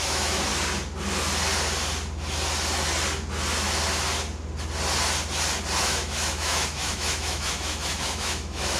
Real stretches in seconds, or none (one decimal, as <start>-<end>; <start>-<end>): 0.5-5.8